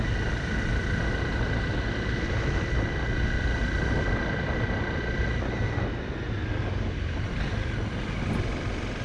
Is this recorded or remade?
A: recorded